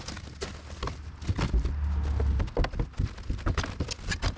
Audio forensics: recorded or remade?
recorded